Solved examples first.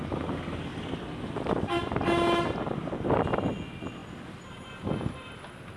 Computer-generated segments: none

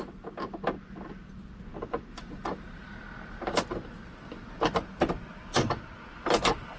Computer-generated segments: none